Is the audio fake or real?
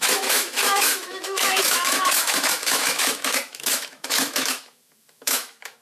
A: fake